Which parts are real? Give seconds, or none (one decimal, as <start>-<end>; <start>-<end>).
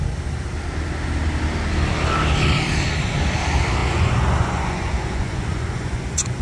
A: 0.0-3.8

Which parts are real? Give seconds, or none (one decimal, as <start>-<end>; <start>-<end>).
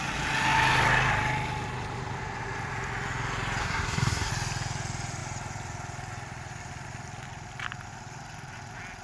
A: 0.0-3.6; 4.3-9.0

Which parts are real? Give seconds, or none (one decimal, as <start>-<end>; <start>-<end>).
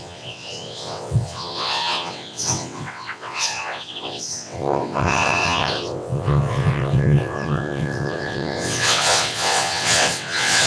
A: none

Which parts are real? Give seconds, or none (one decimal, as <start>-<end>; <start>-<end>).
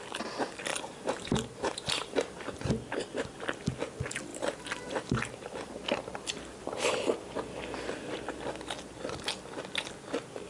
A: 0.0-0.7; 2.7-4.3; 5.7-10.5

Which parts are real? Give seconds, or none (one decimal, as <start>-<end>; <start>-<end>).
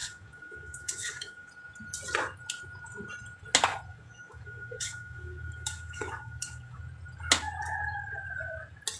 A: 1.5-3.9; 6.8-9.0